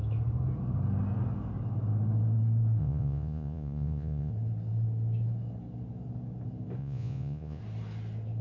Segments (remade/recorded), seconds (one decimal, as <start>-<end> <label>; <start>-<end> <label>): 0.0-2.8 recorded; 2.8-4.3 remade; 4.3-6.8 recorded; 6.8-7.6 remade; 7.6-8.4 recorded